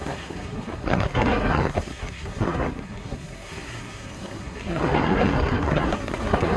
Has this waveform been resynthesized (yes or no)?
yes